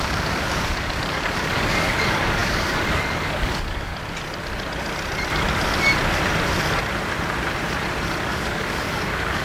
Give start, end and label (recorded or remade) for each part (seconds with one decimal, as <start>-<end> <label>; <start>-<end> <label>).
0.0-3.9 remade; 3.9-8.2 recorded; 8.2-9.4 remade